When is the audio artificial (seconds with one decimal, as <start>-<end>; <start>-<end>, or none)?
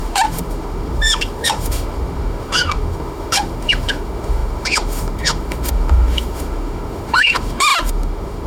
0.0-8.5